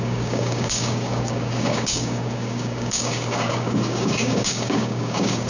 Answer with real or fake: fake